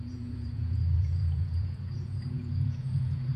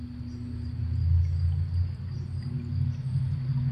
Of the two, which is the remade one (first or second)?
first